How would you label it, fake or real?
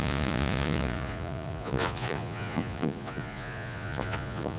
fake